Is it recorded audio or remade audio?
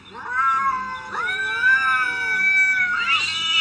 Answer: recorded